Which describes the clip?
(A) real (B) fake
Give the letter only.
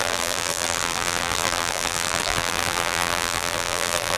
B